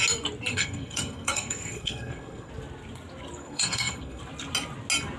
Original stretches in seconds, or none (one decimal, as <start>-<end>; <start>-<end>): 0.0-0.5; 2.5-3.4; 4.2-5.2